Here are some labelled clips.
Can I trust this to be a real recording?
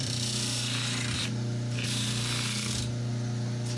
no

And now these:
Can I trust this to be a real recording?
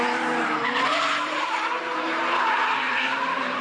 no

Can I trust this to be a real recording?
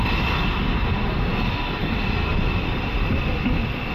no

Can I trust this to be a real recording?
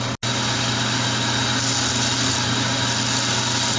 yes